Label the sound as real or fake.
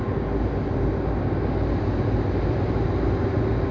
real